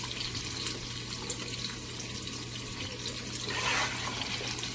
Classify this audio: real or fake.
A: real